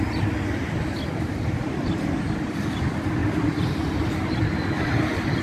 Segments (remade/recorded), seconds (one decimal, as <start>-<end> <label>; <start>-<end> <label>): 0.0-5.4 recorded